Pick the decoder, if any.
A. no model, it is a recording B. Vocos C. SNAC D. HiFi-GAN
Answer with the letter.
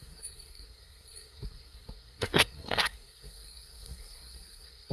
C